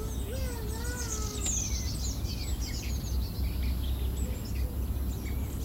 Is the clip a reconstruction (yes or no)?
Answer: no